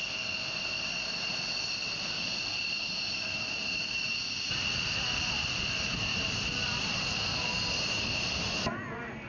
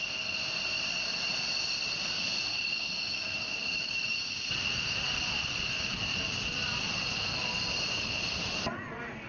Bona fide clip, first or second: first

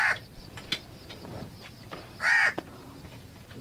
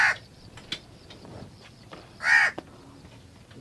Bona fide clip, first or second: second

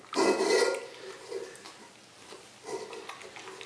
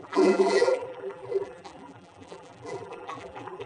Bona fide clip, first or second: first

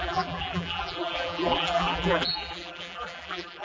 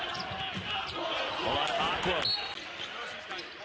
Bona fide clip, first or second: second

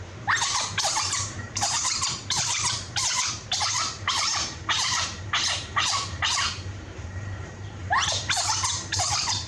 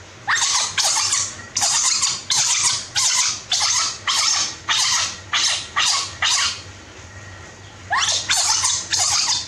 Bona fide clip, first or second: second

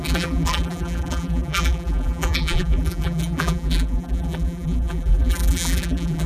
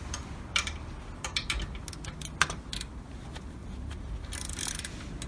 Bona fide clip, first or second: second